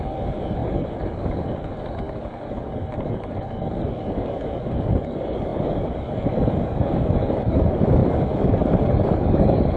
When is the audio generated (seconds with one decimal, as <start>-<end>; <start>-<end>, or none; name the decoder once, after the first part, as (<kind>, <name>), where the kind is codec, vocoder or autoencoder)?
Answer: 0.0-9.8 (codec, DAC)